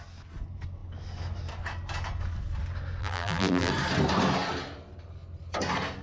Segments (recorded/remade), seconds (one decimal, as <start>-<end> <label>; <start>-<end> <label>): 0.0-3.0 recorded; 3.0-3.7 remade; 3.7-6.0 recorded